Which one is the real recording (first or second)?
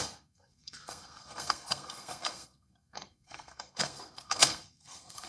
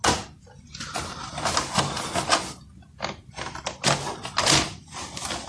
second